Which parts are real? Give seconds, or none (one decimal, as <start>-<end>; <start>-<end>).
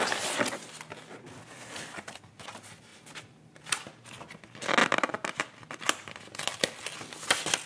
0.0-2.9; 3.8-4.8; 5.8-7.7